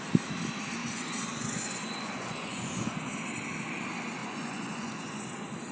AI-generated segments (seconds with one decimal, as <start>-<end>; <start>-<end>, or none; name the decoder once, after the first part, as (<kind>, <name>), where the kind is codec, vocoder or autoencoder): 0.8-3.1 (vocoder, Vocos); 4.2-5.2